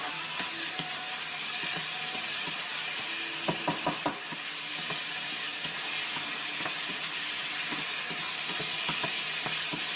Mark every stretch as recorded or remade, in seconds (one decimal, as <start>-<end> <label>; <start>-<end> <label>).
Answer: 0.0-10.0 recorded